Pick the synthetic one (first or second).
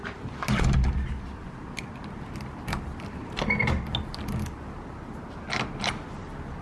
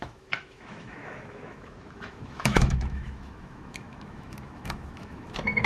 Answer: second